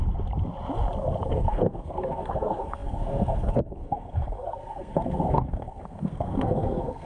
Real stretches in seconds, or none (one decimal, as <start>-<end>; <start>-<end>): 0.0-1.3